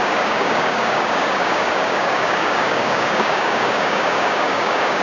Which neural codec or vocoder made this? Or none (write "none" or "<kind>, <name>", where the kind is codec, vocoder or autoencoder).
codec, DAC